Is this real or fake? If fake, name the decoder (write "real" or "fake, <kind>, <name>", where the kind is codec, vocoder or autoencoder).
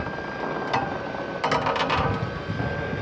real